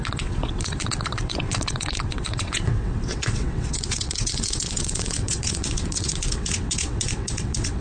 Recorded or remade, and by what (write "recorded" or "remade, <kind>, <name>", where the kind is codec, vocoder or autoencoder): remade, vocoder, WaveNeXt